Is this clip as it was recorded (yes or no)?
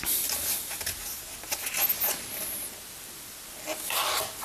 yes